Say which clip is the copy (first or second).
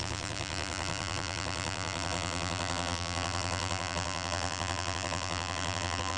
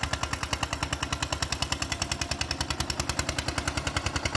first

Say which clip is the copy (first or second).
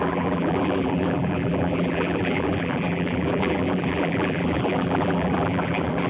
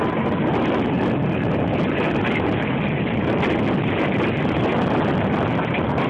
first